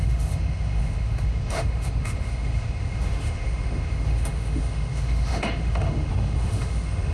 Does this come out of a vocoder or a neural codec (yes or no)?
yes